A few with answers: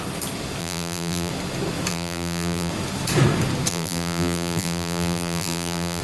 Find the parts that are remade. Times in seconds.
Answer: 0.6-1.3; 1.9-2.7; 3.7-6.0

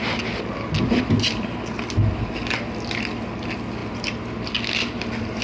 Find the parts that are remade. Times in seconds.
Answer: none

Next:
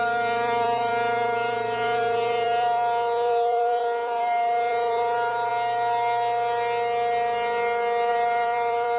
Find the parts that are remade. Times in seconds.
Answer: 0.0-5.5; 8.1-9.0